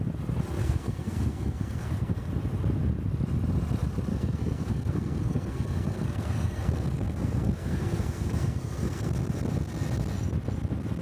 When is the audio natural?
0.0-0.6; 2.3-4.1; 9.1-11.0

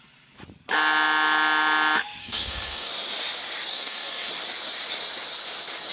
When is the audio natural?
0.0-2.2; 2.9-3.7; 4.3-5.9

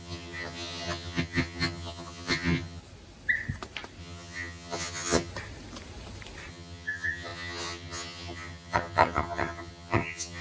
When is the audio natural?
2.8-4.0; 5.3-6.5

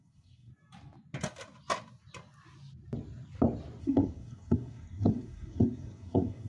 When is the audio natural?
0.5-3.8